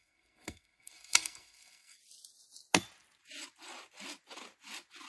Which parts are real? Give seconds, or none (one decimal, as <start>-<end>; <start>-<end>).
2.0-5.1